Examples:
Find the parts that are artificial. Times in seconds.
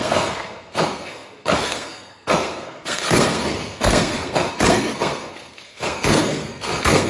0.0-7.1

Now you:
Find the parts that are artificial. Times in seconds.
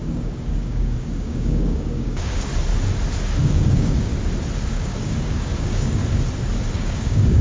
0.0-2.5; 3.4-4.1; 4.7-6.0; 6.7-7.4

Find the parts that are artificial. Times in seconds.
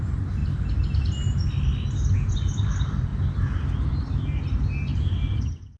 0.0-0.4; 2.3-3.1; 3.8-5.8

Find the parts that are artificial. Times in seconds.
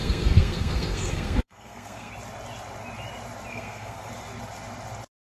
0.0-2.1; 3.5-4.1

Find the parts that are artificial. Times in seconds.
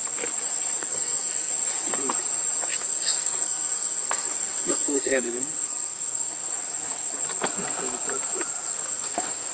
0.8-1.5; 2.7-6.3; 8.7-9.5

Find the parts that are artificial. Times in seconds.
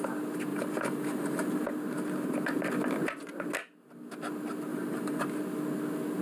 0.5-1.7; 4.7-5.2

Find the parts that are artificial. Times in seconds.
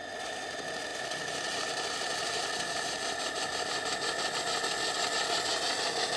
none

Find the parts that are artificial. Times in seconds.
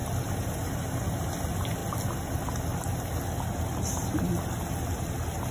0.0-1.4